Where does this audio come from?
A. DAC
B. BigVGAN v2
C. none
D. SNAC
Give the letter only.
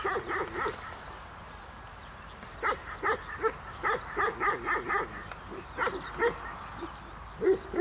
C